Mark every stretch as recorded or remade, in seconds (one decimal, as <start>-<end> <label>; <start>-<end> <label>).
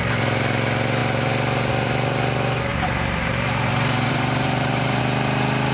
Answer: 0.0-2.7 recorded; 2.7-5.0 remade; 5.0-5.7 recorded